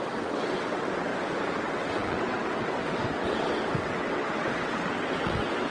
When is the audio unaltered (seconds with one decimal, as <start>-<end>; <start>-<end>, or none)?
1.1-1.6